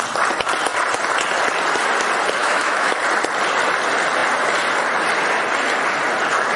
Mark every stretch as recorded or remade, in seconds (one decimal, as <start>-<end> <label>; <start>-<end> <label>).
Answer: 0.0-2.4 recorded; 2.4-3.0 remade; 3.0-6.6 recorded